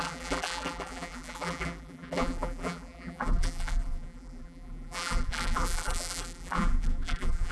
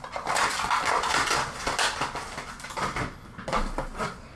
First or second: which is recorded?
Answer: second